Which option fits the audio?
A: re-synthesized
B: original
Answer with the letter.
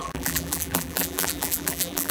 A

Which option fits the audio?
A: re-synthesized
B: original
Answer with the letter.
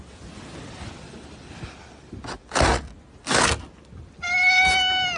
B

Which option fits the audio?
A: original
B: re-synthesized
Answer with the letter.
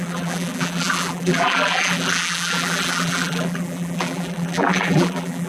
B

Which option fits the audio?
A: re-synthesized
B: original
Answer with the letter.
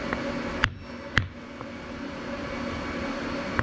B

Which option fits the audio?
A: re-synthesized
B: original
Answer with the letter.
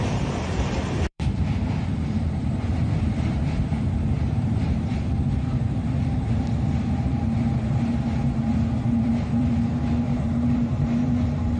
A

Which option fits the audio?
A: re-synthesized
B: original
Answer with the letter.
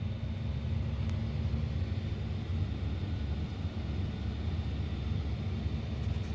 B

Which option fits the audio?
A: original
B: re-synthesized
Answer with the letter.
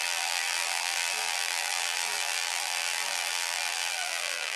B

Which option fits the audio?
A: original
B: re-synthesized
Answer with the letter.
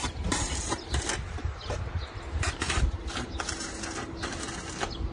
B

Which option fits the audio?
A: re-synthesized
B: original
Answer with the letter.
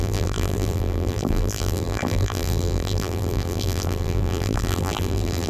A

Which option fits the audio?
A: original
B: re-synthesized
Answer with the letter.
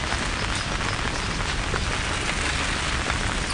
A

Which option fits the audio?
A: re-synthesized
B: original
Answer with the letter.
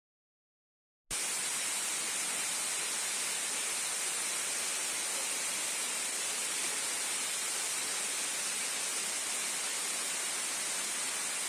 B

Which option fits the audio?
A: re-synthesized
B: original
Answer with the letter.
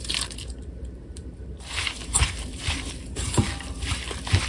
A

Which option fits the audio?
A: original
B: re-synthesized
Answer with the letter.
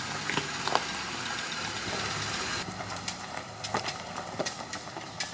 B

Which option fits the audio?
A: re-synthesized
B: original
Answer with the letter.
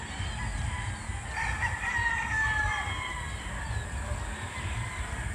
B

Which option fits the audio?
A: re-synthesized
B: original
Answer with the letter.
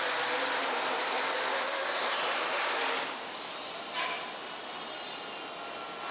A